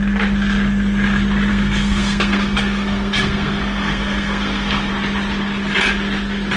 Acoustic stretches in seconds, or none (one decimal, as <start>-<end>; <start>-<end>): 0.0-1.5; 4.9-6.6